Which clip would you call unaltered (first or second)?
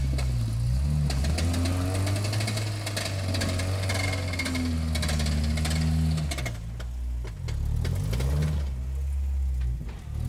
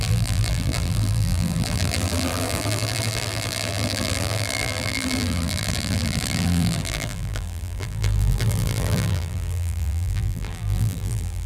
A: first